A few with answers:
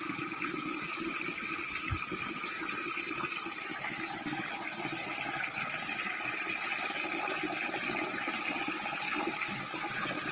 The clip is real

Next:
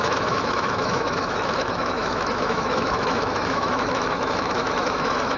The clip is fake